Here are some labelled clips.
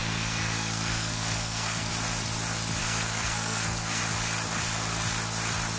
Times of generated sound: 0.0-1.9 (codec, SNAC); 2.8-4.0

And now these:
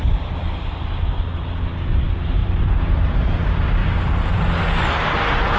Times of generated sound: 2.4-3.4 (vocoder, BigVGAN v2); 3.8-4.6

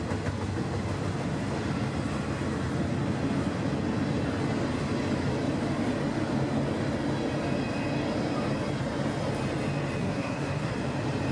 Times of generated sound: 10.0-10.7 (codec, SNAC)

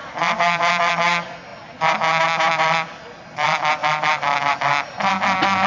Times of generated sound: 0.0-1.5 (vocoder, BigVGAN v2); 2.2-3.8; 4.4-5.7